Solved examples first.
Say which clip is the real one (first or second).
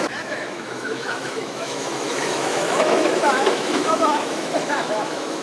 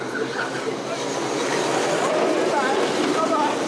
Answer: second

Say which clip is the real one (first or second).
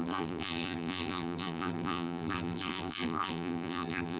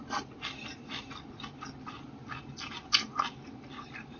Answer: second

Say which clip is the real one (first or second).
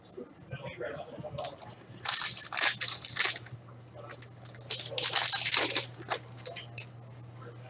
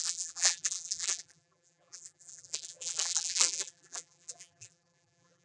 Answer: first